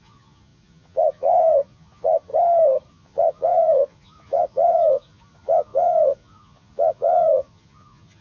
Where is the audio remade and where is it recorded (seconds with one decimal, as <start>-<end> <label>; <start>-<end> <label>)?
0.0-2.3 remade; 2.3-2.9 recorded; 2.9-8.2 remade